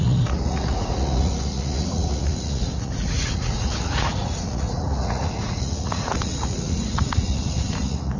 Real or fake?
fake